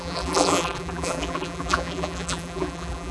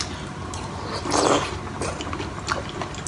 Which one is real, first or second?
second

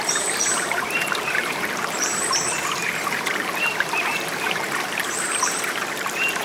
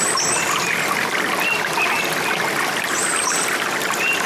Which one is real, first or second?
second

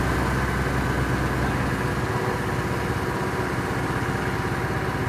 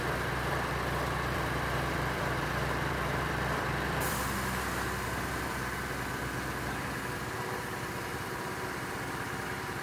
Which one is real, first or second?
first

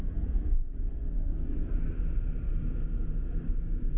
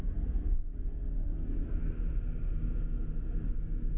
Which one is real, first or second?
second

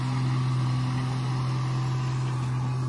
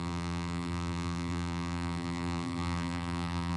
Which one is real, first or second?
first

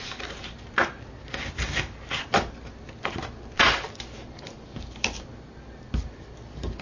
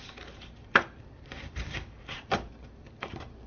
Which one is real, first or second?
first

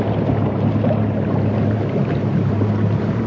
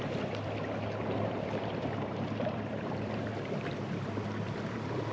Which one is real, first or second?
first